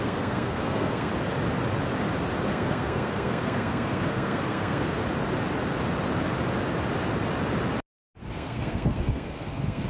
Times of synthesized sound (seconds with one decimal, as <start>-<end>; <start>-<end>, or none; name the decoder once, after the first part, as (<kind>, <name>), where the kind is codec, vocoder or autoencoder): 0.0-1.1 (codec, SNAC); 2.5-5.0; 8.3-9.9